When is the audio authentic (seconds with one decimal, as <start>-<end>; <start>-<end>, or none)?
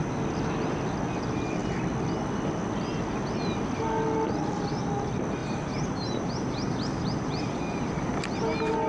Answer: 0.0-5.4; 8.1-8.9